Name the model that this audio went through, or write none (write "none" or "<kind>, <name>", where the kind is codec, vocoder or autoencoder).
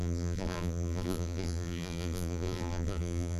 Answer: vocoder, BigVGAN v2